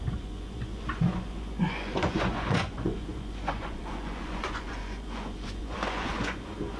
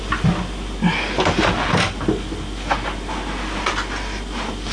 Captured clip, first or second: second